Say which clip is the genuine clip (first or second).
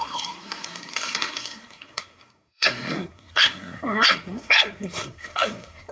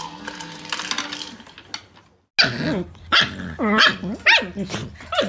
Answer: second